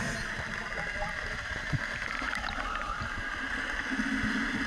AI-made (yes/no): no